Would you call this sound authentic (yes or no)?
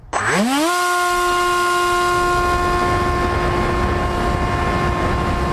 yes